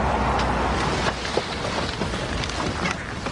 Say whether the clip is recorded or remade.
recorded